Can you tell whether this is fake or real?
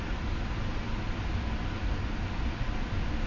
real